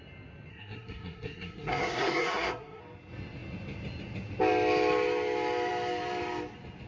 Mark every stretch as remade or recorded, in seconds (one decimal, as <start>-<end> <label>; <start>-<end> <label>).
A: 0.0-0.5 recorded; 0.5-2.8 remade; 2.8-6.9 recorded